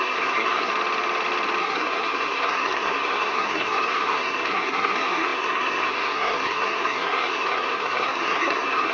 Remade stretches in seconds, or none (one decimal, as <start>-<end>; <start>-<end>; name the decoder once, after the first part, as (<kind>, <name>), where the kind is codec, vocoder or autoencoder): 0.0-0.7 (codec, SNAC); 1.6-8.9